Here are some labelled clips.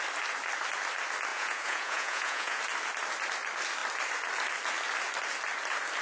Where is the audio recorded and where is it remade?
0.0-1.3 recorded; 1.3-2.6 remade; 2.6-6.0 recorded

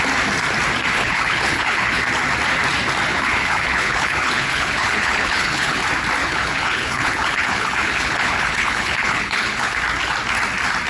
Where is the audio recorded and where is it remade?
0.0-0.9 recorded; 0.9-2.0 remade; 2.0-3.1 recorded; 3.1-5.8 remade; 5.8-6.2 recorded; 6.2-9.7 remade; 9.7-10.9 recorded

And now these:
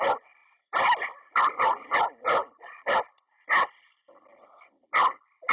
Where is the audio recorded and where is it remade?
0.0-5.5 recorded

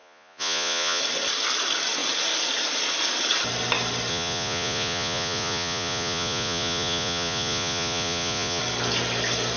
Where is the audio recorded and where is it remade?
0.0-1.0 remade; 1.0-4.1 recorded; 4.1-8.6 remade; 8.6-9.6 recorded

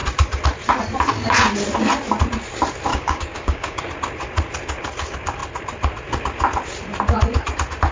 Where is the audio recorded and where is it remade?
0.0-2.9 recorded; 2.9-3.8 remade; 3.8-7.9 recorded